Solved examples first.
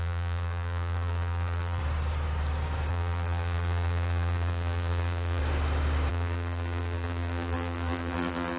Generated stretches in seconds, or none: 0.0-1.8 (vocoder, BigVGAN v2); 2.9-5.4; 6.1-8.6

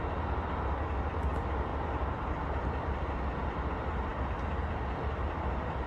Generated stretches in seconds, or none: 1.7-3.1 (vocoder, BigVGAN v2)

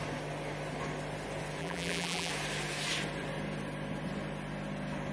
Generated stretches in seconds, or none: 1.6-2.3 (vocoder, BigVGAN v2)

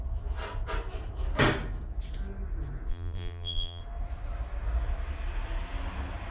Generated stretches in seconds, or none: 2.9-3.8 (vocoder, BigVGAN v2)

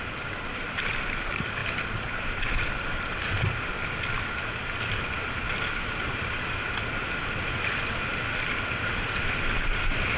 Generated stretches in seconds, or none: 1.6-3.7 (vocoder, BigVGAN v2)

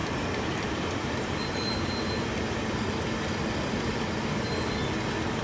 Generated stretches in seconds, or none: 0.0-1.9 (vocoder, BigVGAN v2)

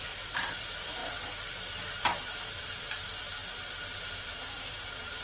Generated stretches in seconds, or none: 0.0-1.0 (vocoder, BigVGAN v2); 2.6-3.4; 4.4-5.2